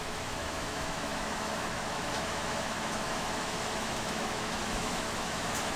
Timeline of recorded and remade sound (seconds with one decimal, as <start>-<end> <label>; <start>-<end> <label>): 0.0-5.8 remade